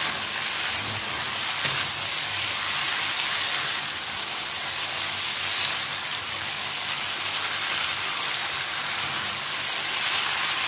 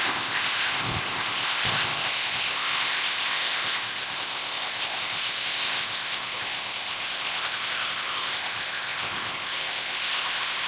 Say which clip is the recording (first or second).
first